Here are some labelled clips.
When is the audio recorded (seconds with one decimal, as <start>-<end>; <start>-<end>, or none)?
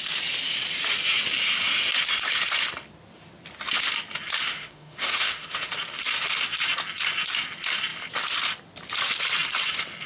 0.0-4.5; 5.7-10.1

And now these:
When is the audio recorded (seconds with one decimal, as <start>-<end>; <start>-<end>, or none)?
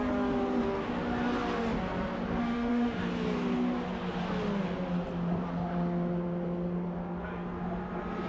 0.0-2.4; 3.0-8.3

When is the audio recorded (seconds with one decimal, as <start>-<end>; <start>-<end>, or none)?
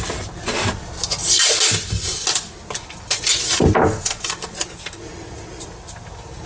0.0-6.5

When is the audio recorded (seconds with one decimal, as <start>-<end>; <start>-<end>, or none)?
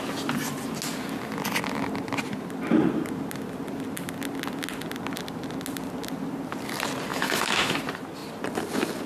0.0-7.1; 7.8-9.1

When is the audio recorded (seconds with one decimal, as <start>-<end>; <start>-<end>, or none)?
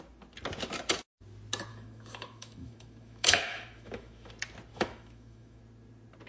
0.0-1.7; 4.3-4.7; 5.6-6.3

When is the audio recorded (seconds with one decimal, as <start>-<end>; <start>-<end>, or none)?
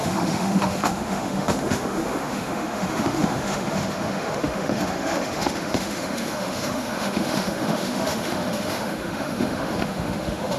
none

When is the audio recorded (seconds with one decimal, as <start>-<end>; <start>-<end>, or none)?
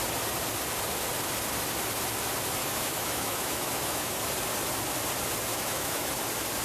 0.0-2.6; 4.1-5.5; 6.1-6.6